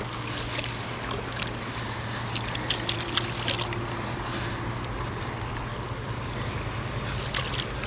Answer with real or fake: real